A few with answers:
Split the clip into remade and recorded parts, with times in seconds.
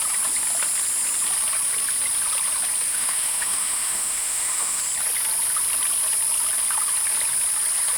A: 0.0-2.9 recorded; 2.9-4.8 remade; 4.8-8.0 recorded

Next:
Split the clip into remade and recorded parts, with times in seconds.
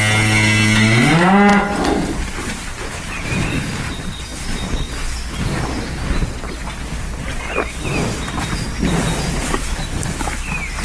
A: 0.0-10.8 recorded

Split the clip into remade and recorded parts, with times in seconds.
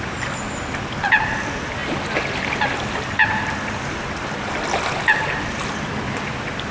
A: 0.0-6.7 recorded